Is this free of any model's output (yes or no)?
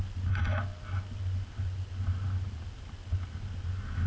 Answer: yes